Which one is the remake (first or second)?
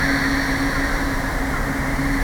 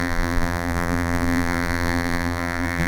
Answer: second